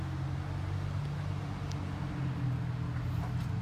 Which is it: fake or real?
real